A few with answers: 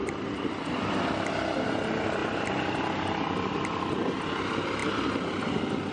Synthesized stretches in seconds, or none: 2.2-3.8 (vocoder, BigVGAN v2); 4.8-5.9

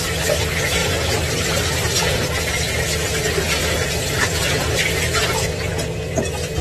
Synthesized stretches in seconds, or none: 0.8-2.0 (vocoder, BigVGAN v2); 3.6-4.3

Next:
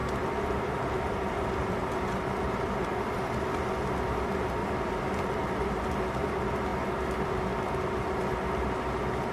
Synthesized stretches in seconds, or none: 0.0-3.4 (vocoder, BigVGAN v2); 4.6-5.3; 6.7-7.3

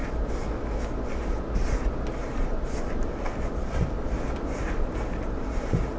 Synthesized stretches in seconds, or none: 2.2-6.0 (vocoder, BigVGAN v2)